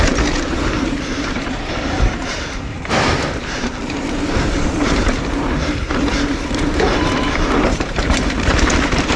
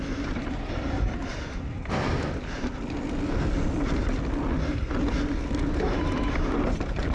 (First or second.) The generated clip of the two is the first